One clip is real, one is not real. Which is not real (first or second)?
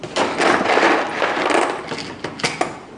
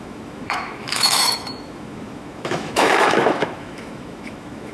second